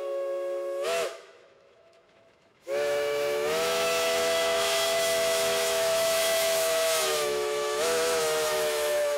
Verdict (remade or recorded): remade